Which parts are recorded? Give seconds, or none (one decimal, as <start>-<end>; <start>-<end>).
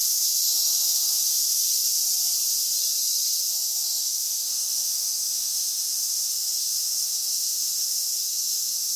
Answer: 1.6-3.5